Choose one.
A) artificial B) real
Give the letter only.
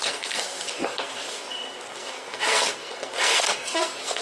A